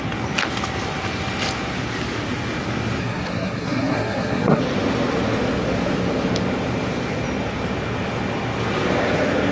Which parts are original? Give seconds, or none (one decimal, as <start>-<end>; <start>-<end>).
0.0-3.0; 4.6-9.5